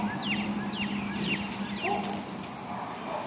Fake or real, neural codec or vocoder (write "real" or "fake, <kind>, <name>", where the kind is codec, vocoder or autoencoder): real